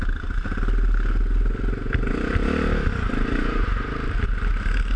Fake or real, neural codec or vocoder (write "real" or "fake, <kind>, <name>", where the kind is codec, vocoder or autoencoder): real